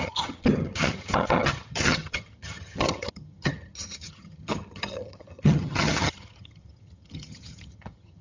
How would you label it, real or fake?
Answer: fake